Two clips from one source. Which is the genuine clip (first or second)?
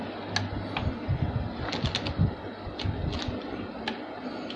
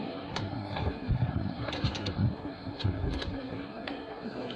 first